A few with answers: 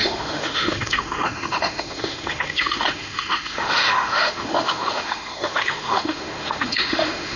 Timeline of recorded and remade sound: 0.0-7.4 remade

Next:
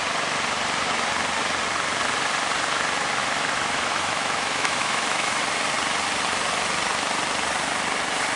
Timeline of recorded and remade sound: 0.0-3.2 recorded; 3.2-5.4 remade; 5.4-8.4 recorded

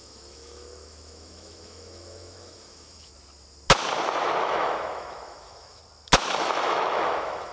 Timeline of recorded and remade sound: 0.0-3.1 remade; 3.1-4.4 recorded; 4.4-5.8 remade; 5.8-6.3 recorded; 6.3-7.5 remade

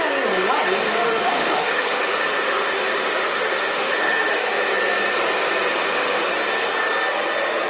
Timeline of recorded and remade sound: 0.0-0.8 recorded; 0.8-4.5 remade; 4.5-5.7 recorded; 5.7-6.2 remade; 6.2-7.7 recorded

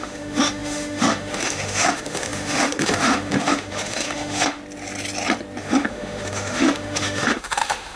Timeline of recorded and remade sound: 0.0-4.6 remade; 4.6-5.6 recorded; 5.6-8.0 remade

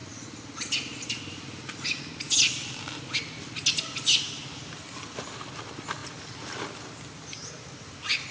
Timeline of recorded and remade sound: 0.0-8.3 recorded

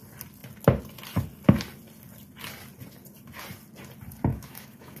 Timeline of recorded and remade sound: 0.0-4.3 recorded; 4.3-5.0 remade

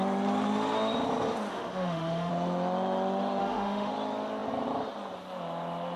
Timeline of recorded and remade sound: 0.0-1.5 recorded; 1.5-2.3 remade; 2.3-3.4 recorded; 3.4-3.9 remade; 3.9-6.0 recorded